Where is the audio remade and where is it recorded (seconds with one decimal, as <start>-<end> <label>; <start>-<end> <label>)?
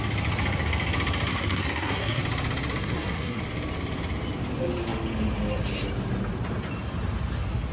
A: 0.0-1.3 recorded; 1.3-2.2 remade; 2.2-2.8 recorded; 2.8-3.4 remade; 3.4-7.7 recorded